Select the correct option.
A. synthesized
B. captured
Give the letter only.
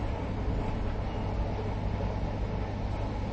B